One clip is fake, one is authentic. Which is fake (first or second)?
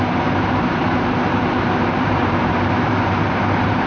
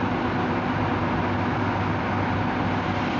first